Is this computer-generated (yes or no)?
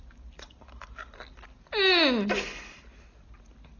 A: no